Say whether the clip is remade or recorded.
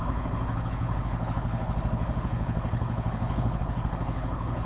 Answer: remade